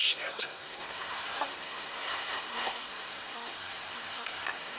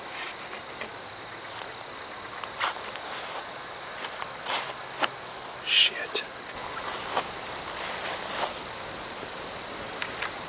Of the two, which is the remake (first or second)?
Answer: first